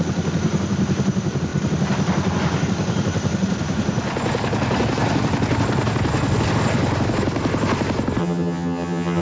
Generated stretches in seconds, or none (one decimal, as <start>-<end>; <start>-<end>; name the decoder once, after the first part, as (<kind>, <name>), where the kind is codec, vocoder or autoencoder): 8.2-9.2 (vocoder, HiFi-GAN)